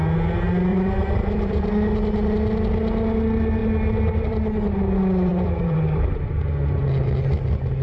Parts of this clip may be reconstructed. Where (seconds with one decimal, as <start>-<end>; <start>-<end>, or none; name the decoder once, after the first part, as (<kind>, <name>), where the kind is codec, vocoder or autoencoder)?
0.7-1.7 (vocoder, BigVGAN v2); 5.3-6.4